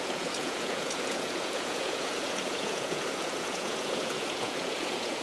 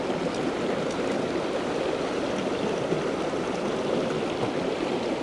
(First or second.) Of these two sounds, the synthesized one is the first